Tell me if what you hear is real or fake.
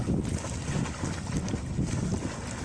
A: real